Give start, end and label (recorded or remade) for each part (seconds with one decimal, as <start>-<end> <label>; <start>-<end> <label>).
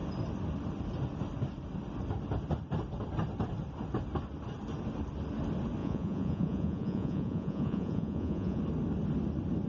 0.0-5.8 recorded; 5.8-8.6 remade; 8.6-9.7 recorded